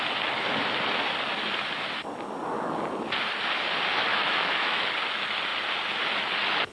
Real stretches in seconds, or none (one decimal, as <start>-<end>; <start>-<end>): 0.0-4.1; 4.9-6.7